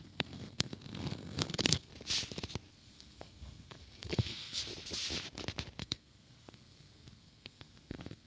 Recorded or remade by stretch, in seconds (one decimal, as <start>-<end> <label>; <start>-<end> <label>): 0.0-1.9 remade; 1.9-2.7 recorded; 2.7-4.6 remade; 4.6-5.8 recorded; 5.8-8.3 remade